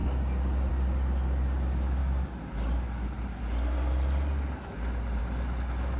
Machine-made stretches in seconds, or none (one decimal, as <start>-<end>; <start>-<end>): none